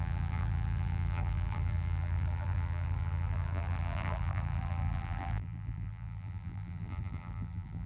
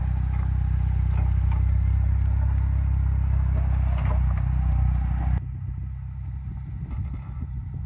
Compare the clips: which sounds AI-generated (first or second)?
first